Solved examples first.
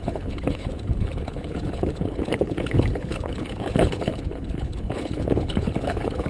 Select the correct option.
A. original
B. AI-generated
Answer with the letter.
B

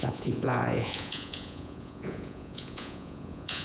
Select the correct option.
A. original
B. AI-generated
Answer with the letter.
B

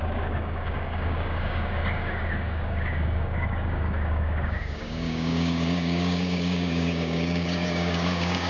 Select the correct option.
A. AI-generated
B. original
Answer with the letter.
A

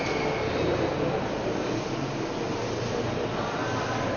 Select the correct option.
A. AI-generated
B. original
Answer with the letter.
B